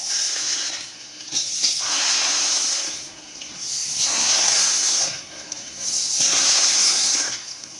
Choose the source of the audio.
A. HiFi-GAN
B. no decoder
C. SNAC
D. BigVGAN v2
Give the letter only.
C